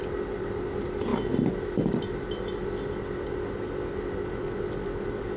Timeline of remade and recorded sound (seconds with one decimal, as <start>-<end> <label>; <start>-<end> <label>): 0.0-5.4 recorded